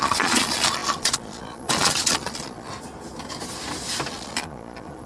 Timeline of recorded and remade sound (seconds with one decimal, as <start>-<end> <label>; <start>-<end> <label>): 0.0-2.7 remade; 2.7-4.1 recorded; 4.1-5.1 remade